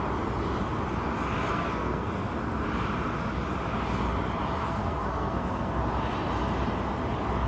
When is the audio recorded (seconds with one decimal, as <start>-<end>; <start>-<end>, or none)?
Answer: 0.0-1.5; 2.1-4.6; 5.7-7.5